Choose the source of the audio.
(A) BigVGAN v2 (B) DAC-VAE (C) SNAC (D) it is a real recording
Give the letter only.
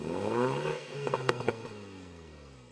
C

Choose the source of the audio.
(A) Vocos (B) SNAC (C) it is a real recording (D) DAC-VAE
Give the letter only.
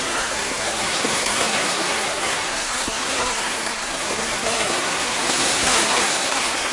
B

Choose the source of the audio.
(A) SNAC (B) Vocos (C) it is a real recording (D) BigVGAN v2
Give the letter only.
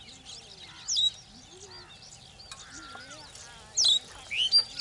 C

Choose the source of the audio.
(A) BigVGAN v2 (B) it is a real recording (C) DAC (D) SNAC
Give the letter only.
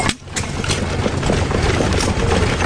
B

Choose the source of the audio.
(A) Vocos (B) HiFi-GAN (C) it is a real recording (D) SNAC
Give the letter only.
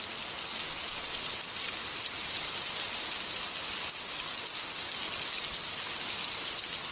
C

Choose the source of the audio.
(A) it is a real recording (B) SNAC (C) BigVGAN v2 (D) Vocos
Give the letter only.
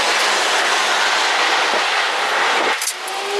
A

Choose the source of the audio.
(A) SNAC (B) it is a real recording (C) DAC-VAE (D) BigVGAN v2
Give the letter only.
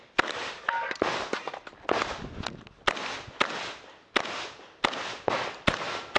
B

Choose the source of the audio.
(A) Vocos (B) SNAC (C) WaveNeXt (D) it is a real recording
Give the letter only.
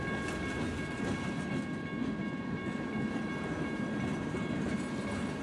D